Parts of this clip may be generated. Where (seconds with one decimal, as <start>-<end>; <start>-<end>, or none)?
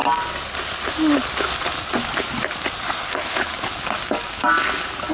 3.1-3.5